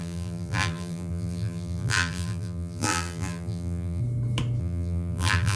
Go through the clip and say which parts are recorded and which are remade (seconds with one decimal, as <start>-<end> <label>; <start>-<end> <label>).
0.0-4.0 remade; 4.0-4.6 recorded; 4.6-5.6 remade